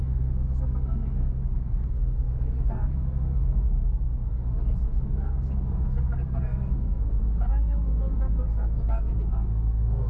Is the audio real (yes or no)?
no